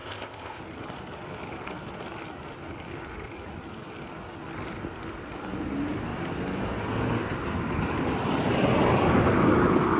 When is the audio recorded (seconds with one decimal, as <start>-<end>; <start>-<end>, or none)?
0.6-10.0